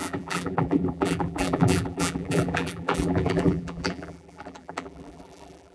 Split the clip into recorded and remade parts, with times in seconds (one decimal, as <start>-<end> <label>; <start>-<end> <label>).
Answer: 0.0-5.7 remade